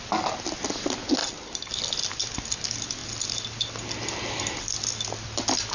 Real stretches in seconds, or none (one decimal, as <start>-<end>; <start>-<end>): 0.0-5.7